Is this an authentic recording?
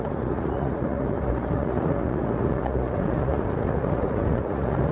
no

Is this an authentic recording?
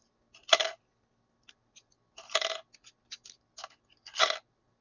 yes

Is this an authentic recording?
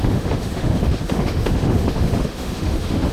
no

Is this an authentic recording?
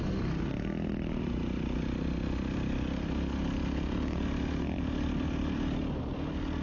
yes